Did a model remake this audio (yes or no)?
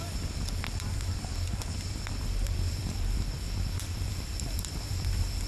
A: yes